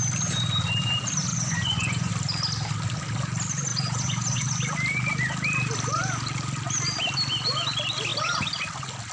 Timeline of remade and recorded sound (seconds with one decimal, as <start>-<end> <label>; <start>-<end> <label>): 0.0-1.3 recorded; 1.3-2.1 remade; 2.1-3.7 recorded; 3.7-4.5 remade; 4.5-9.1 recorded